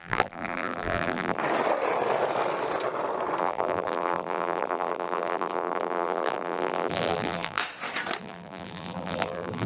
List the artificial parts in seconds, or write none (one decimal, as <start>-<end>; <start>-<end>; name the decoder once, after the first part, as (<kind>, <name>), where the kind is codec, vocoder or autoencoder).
0.0-1.4 (vocoder, BigVGAN v2); 3.4-7.6; 8.2-9.7